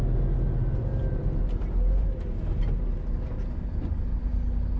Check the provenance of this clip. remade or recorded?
recorded